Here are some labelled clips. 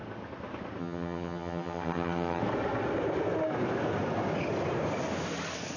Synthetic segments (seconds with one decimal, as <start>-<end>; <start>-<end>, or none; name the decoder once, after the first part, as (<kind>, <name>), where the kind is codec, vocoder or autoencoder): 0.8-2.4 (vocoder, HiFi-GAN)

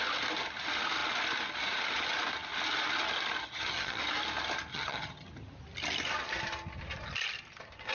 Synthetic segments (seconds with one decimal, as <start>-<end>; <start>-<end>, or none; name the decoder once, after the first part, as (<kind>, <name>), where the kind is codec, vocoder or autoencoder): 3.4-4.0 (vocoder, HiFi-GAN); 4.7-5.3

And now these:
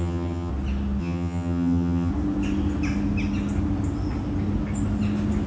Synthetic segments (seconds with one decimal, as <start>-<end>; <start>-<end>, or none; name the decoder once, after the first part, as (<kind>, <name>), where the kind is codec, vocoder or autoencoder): 0.0-0.5 (vocoder, HiFi-GAN); 1.0-2.1

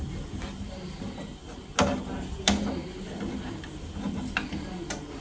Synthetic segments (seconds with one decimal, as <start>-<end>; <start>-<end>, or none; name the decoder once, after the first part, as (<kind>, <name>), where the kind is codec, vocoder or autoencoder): none